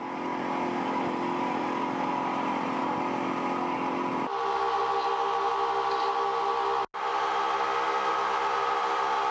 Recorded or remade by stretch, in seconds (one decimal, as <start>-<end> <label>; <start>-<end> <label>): 0.0-9.3 recorded